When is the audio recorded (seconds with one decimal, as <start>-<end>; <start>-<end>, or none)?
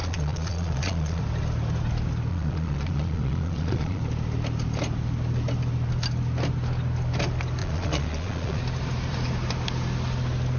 1.2-2.3; 4.0-7.6; 8.6-10.6